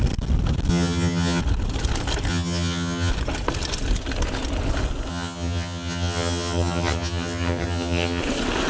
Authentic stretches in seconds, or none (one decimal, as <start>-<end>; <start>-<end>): 0.0-0.7; 1.4-2.3; 3.1-5.1; 8.2-8.7